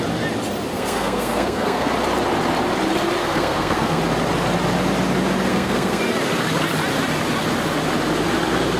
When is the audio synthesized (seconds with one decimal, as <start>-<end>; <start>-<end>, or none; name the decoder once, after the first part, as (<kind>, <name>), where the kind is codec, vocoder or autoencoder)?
0.7-1.9 (codec, SNAC); 3.2-4.0; 5.5-6.0